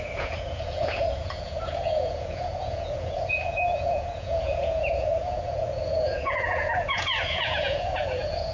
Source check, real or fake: fake